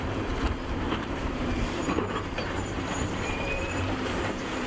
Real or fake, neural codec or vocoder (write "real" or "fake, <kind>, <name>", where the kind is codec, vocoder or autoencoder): fake, vocoder, BigVGAN v2